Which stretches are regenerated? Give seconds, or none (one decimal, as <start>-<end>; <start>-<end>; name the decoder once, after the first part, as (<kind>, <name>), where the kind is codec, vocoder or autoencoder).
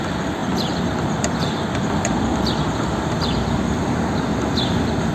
0.4-3.2 (vocoder, BigVGAN v2); 4.3-5.1